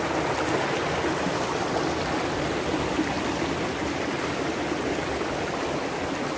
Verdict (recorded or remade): recorded